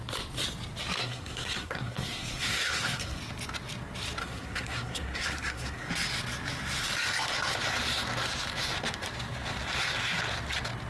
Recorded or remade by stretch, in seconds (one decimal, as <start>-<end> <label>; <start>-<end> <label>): 0.0-1.0 recorded; 1.0-3.2 remade; 3.2-4.2 recorded; 4.2-5.9 remade; 5.9-10.9 recorded